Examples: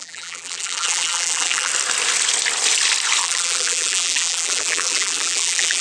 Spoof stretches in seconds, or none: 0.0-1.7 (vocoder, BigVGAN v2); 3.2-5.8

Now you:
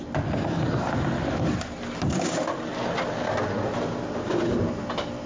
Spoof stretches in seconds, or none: none